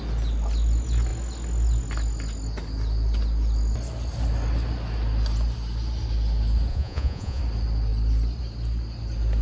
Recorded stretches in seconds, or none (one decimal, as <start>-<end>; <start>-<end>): 0.0-6.7; 7.4-9.4